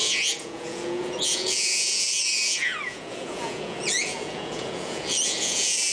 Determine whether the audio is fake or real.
fake